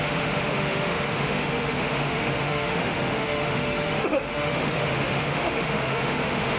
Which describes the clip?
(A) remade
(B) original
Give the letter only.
A